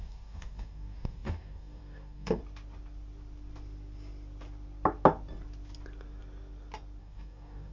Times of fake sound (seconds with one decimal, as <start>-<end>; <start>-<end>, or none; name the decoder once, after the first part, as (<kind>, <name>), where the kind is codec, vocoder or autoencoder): 0.0-2.4 (codec, DAC); 7.0-7.7